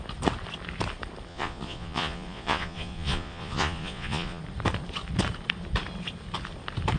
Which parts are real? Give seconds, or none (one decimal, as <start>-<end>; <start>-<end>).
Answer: 0.0-1.3; 4.4-7.0